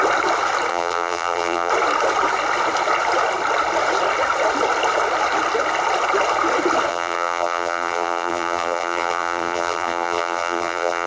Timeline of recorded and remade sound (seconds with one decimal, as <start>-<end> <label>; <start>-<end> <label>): 0.0-0.7 recorded; 0.7-1.7 remade; 1.7-6.9 recorded; 6.9-11.1 remade